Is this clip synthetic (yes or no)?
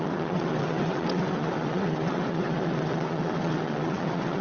yes